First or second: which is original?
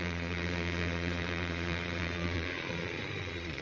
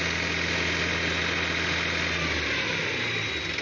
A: second